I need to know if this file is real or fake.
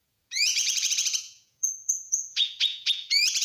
fake